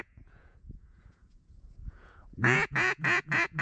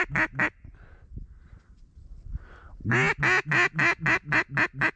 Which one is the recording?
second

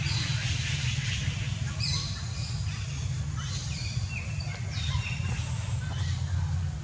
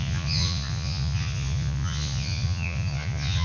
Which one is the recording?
first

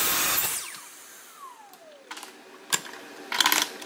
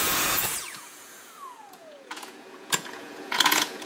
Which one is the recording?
first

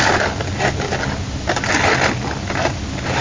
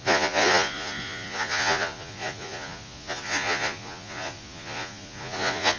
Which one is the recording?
first